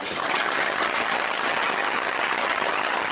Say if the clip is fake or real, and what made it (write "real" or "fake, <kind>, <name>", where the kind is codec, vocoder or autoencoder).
fake, vocoder, HiFi-GAN